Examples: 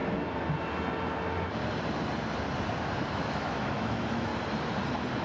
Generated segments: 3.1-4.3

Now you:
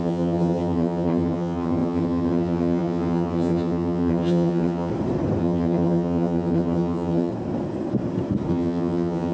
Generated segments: 0.0-4.9; 5.4-7.3; 8.5-9.3

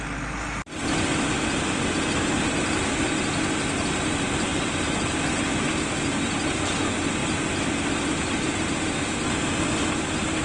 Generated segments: none

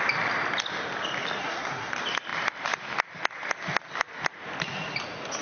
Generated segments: 1.4-1.9